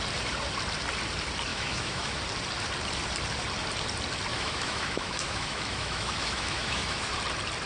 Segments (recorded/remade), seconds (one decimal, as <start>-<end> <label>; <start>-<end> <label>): 0.0-1.5 recorded; 1.5-2.2 remade; 2.2-4.3 recorded; 4.3-7.1 remade; 7.1-7.7 recorded